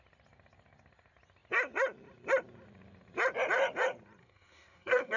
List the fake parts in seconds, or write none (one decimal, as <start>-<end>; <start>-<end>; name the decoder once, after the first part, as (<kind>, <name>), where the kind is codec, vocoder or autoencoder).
4.2-5.2 (codec, SNAC)